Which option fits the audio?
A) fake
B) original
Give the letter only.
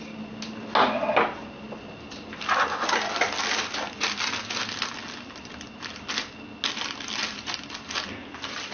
B